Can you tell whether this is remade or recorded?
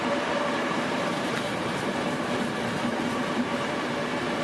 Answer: remade